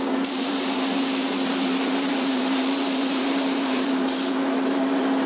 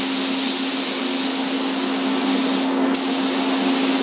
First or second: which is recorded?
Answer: second